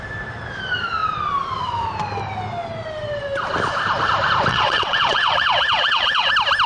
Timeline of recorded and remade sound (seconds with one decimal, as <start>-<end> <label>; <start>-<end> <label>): 0.0-4.5 recorded; 4.5-6.3 remade; 6.3-6.7 recorded